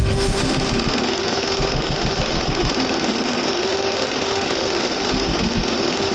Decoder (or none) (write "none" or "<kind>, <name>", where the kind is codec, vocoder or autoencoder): autoencoder, DAC-VAE